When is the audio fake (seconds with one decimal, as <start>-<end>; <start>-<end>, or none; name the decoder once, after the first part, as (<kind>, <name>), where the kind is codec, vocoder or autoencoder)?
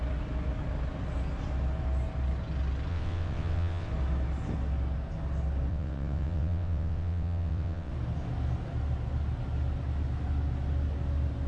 2.9-3.9 (vocoder, WaveNeXt); 5.7-7.9